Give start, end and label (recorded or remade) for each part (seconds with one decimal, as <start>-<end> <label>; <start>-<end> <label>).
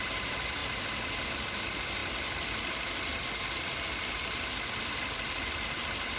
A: 0.0-6.2 recorded